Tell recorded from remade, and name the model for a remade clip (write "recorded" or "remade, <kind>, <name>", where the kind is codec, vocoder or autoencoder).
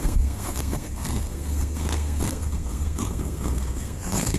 remade, codec, SNAC